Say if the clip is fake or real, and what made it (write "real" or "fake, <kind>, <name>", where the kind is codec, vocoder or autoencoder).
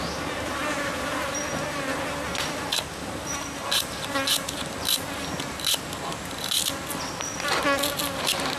real